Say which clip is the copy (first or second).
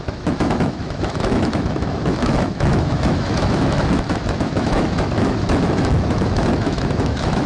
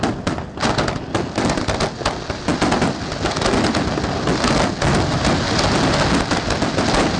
first